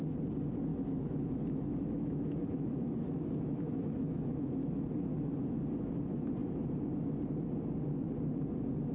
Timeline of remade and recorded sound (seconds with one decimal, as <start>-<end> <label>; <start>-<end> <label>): 0.0-0.7 recorded; 0.7-4.8 remade; 4.8-8.9 recorded